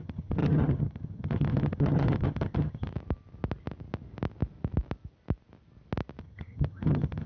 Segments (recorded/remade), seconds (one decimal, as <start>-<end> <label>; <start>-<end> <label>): 0.0-2.9 remade; 2.9-6.2 recorded; 6.2-7.3 remade